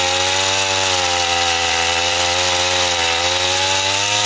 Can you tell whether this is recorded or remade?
recorded